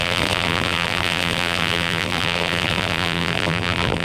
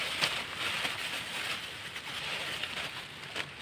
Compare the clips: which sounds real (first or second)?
second